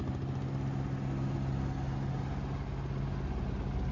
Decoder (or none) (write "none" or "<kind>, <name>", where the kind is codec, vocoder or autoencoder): none